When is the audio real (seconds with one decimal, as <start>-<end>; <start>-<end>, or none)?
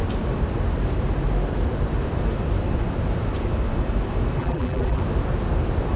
0.0-4.4; 5.0-6.0